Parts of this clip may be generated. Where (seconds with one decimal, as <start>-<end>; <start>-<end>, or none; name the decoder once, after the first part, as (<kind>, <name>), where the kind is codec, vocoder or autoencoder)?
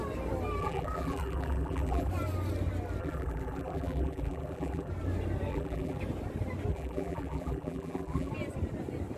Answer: 0.6-2.1 (vocoder, BigVGAN v2); 3.0-4.9; 5.5-6.0; 6.7-8.3